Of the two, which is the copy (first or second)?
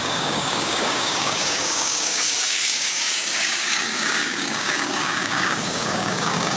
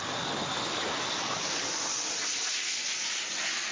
first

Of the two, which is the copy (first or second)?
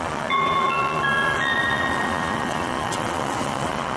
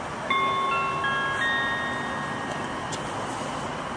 first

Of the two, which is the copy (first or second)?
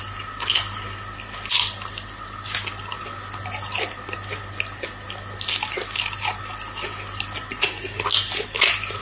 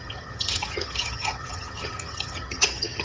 second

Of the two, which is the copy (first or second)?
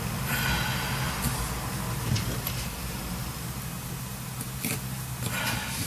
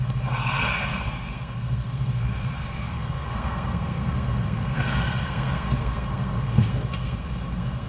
second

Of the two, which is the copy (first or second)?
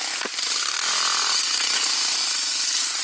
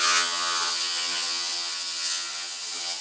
second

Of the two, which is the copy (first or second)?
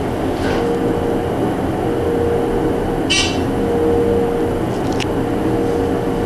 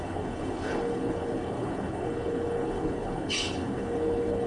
second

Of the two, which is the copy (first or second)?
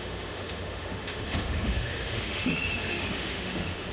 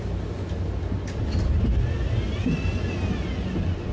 first